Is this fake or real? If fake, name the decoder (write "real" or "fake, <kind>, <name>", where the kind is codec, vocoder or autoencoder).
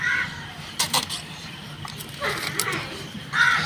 fake, vocoder, BigVGAN v2